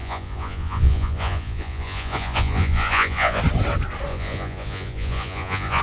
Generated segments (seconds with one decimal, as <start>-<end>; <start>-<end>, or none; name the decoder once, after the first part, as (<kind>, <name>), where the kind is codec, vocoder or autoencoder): 0.0-3.4 (vocoder, Vocos); 4.1-5.8